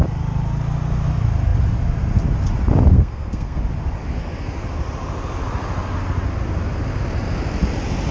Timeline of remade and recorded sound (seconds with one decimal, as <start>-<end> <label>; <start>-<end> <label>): 0.0-2.9 recorded; 2.9-3.6 remade; 3.6-8.1 recorded